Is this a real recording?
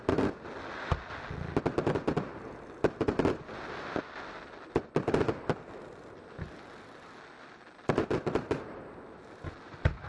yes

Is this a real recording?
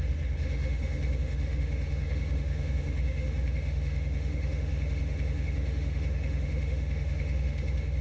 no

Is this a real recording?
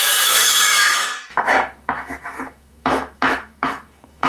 no